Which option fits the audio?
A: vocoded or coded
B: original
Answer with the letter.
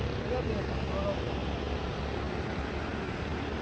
B